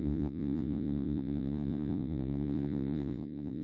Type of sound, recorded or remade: remade